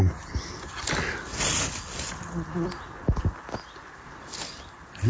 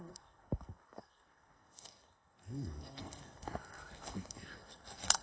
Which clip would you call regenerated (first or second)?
second